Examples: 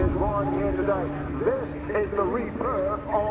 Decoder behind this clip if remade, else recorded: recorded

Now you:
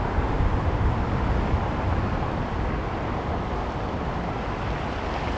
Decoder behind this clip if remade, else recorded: recorded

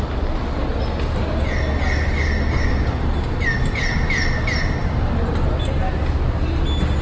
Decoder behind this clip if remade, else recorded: recorded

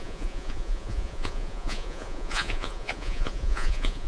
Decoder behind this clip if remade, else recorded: remade, vocoder, Vocos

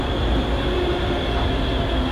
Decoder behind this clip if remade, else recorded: recorded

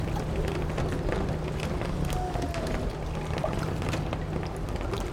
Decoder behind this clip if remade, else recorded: recorded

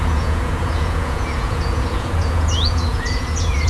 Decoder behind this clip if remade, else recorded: remade, vocoder, Vocos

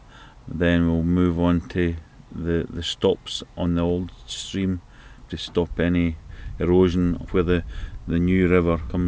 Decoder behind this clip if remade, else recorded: recorded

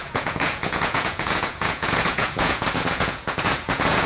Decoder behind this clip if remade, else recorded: remade, vocoder, Vocos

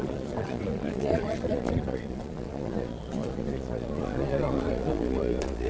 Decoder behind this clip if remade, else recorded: remade, vocoder, Vocos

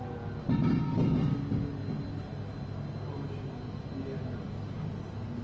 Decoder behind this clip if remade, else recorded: recorded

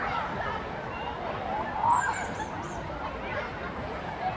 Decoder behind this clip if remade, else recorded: remade, vocoder, BigVGAN v2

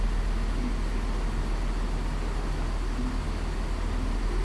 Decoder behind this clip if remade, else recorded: recorded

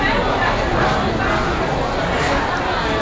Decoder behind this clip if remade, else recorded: recorded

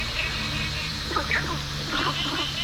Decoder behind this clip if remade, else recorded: recorded